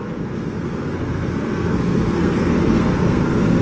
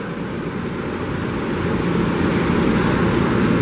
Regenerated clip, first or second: first